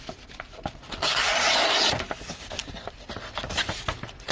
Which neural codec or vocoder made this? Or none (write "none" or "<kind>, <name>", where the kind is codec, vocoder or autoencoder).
none